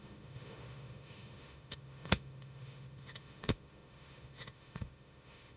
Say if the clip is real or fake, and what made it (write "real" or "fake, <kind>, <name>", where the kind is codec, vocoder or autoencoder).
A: fake, autoencoder, DAC-VAE